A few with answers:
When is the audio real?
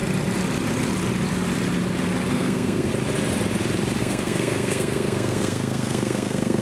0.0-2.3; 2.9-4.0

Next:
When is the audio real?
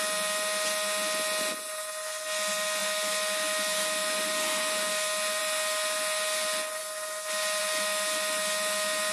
0.0-9.1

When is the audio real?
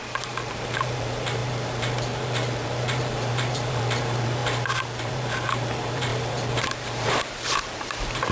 4.4-5.0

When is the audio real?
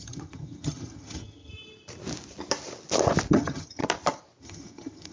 1.5-3.3; 3.8-4.4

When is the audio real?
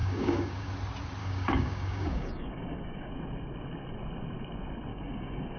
0.7-1.2; 3.1-4.9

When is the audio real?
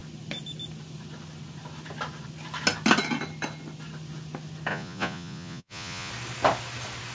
0.0-4.7; 6.1-7.1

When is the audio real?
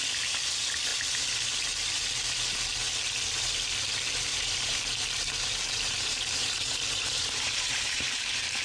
0.0-4.3; 8.1-8.6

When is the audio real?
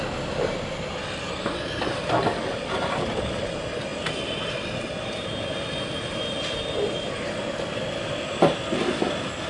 0.0-9.5